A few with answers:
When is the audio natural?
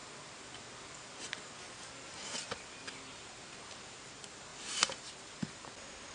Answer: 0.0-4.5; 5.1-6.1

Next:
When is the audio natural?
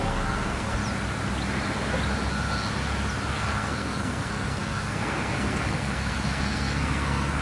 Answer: 0.8-3.3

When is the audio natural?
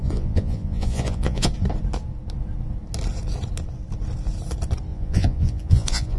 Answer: 1.5-4.9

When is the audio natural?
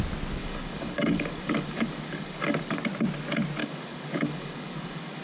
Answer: 0.0-0.4; 2.8-3.6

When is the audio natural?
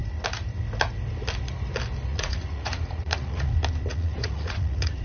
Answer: 0.0-2.1; 3.5-3.9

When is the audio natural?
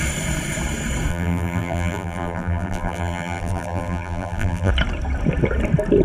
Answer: 0.0-1.1; 4.7-6.0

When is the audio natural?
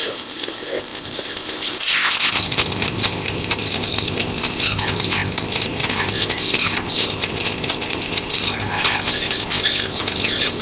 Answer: none